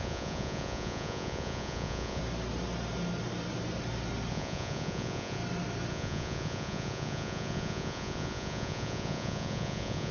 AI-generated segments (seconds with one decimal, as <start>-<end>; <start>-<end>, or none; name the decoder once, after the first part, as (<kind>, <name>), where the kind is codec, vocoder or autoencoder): 0.0-2.2 (vocoder, Vocos); 4.3-5.4; 5.9-10.1